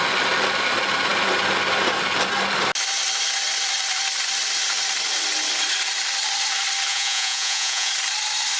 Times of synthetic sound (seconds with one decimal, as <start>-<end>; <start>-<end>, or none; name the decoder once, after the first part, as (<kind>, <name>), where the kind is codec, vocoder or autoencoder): 6.9-7.9 (vocoder, Vocos)